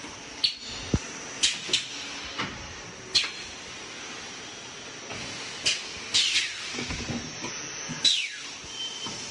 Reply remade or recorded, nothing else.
recorded